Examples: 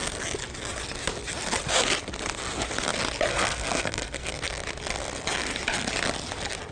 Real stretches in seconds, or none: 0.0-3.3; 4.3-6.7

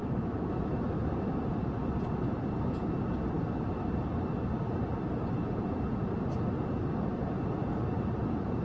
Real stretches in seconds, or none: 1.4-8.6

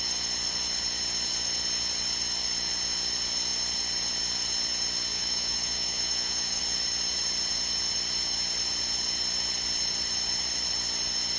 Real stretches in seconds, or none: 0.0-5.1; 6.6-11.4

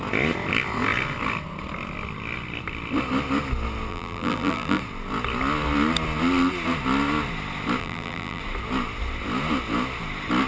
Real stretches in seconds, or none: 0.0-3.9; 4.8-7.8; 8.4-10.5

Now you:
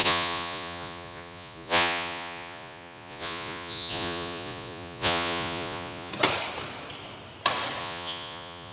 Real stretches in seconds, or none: 6.1-7.8